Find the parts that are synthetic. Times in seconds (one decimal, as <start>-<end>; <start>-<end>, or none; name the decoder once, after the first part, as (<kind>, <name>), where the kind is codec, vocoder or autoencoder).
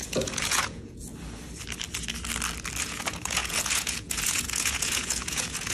0.0-1.1 (vocoder, Vocos); 2.8-5.7